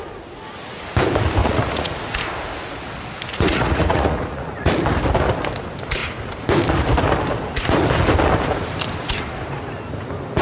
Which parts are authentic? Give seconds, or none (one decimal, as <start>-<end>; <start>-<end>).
0.0-1.4; 2.2-3.3; 4.7-10.4